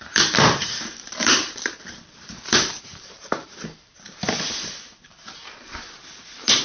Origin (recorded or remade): remade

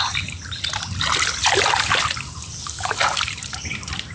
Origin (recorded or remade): recorded